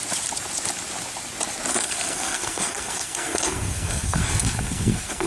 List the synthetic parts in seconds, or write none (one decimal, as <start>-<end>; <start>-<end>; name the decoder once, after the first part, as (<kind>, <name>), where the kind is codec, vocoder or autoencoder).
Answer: 1.7-5.3 (codec, SNAC)